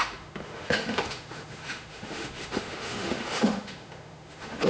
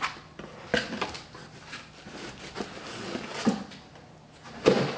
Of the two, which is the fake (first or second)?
first